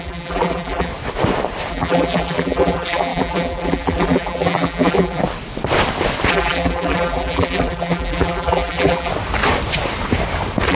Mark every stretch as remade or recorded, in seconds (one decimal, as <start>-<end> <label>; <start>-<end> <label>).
0.0-0.9 remade; 0.9-1.7 recorded; 1.7-5.2 remade; 5.2-6.3 recorded; 6.3-9.1 remade; 9.1-10.7 recorded